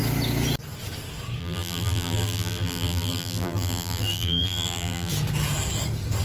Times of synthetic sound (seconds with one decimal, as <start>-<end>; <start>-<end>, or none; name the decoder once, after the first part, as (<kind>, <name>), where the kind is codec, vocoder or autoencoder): 1.4-5.1 (vocoder, BigVGAN v2)